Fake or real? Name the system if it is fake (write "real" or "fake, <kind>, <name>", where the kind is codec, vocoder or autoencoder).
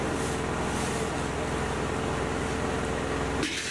real